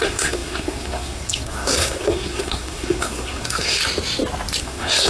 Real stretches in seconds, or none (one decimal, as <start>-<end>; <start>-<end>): 3.8-4.6